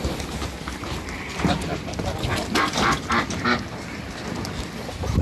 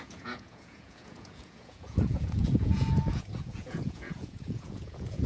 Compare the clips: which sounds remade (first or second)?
second